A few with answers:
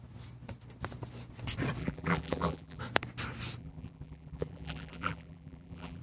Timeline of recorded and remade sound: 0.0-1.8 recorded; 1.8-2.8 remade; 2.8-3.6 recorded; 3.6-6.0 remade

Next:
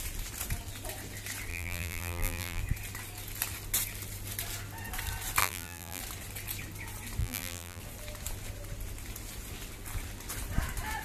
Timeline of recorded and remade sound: 0.0-1.5 recorded; 1.5-2.6 remade; 2.6-5.4 recorded; 5.4-6.0 remade; 6.0-7.2 recorded; 7.2-7.8 remade; 7.8-11.0 recorded

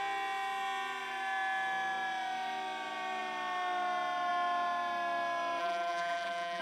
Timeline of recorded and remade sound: 0.0-5.6 recorded; 5.6-6.6 remade